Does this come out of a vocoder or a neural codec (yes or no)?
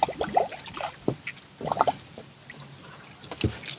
no